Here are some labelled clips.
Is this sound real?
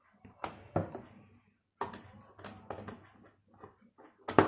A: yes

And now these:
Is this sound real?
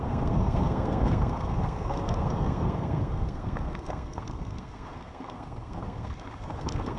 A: no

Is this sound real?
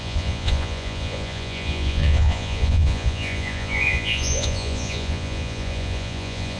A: no